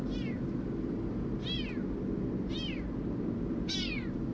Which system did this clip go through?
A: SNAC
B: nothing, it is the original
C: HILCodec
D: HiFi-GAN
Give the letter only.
B